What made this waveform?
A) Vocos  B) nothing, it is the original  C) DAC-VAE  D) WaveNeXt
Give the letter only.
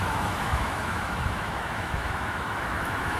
C